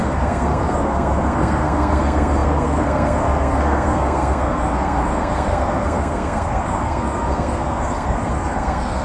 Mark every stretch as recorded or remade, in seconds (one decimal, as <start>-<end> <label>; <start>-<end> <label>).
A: 0.0-9.0 remade